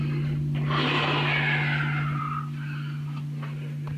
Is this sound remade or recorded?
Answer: recorded